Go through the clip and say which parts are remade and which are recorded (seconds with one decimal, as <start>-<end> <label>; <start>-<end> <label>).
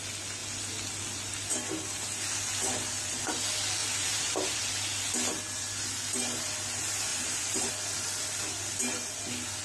0.0-3.8 recorded; 3.8-4.6 remade; 4.6-7.1 recorded; 7.1-7.7 remade; 7.7-9.6 recorded